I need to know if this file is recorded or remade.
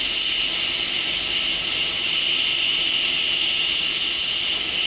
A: recorded